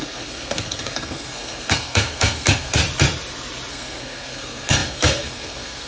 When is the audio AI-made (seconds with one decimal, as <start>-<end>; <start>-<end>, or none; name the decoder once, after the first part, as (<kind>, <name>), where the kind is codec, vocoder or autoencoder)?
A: 0.0-2.8 (codec, SNAC); 3.7-5.9